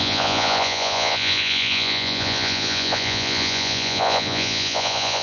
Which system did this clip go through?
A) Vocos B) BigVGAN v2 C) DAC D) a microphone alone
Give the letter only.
A